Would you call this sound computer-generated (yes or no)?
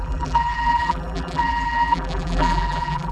yes